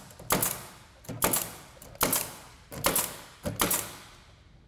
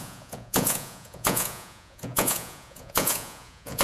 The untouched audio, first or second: first